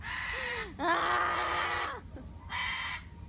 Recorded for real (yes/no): yes